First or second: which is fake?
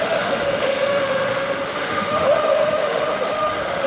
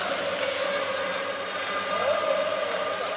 first